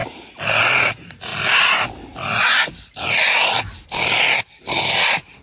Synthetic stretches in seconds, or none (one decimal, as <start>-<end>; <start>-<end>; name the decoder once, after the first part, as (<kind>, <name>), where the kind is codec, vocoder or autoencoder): none